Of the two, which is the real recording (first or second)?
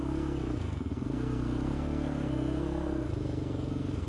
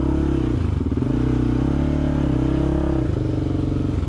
second